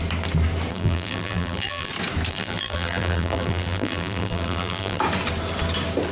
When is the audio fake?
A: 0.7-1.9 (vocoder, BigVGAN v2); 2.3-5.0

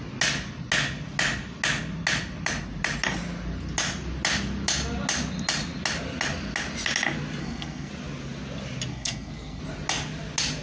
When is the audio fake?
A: 7.4-7.9 (codec, SNAC); 8.9-9.6

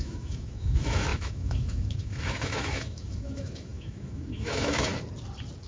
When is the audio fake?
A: 0.0-4.9 (autoencoder, DAC-VAE)